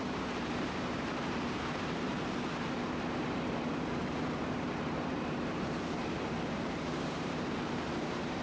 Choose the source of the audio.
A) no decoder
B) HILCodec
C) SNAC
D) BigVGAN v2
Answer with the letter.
D